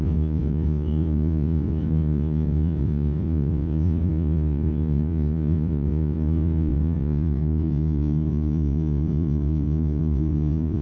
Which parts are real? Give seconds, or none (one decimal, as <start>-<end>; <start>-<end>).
none